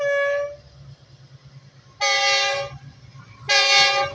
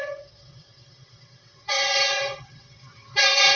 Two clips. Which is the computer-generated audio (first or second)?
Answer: second